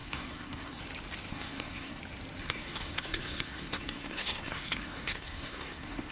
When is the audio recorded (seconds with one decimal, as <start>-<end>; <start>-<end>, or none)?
0.8-1.3; 2.0-2.4